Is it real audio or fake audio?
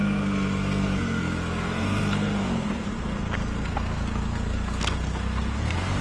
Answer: fake